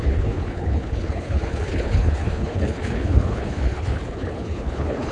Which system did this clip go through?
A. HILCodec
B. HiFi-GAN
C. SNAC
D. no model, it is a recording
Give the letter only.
A